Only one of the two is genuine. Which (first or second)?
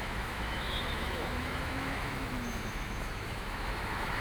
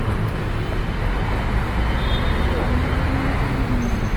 second